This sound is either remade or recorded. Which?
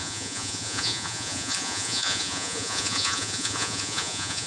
remade